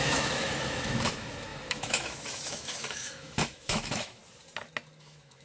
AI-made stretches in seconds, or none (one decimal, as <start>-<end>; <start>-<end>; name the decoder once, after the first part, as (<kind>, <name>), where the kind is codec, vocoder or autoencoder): 0.0-4.2 (autoencoder, DAC-VAE); 5.0-5.4